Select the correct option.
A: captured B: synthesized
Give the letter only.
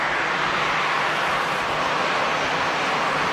A